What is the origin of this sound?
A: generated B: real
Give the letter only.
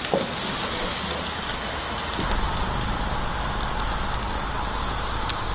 B